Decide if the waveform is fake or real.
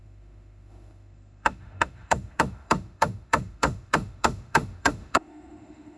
fake